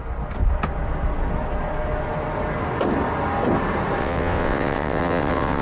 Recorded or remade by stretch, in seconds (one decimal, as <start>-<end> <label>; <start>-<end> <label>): 0.0-4.0 recorded; 4.0-5.6 remade